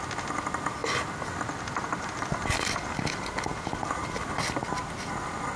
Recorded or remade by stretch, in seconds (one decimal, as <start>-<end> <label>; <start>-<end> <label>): 0.0-5.6 recorded